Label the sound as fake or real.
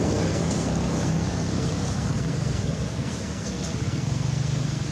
fake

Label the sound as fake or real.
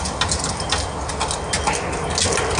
real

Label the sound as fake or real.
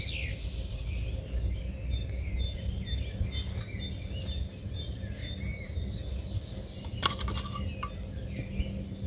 real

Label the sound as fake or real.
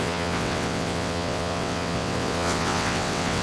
fake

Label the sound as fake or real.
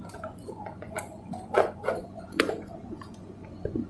fake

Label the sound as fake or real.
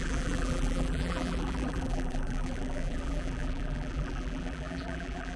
fake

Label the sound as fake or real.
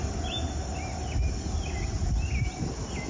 real